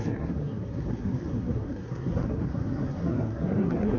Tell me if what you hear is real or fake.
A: fake